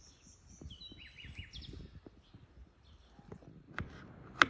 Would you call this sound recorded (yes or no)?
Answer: yes